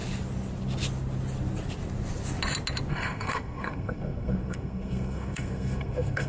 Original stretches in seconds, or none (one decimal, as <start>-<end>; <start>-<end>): 0.0-2.9